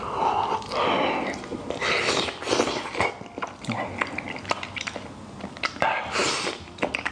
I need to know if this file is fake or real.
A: real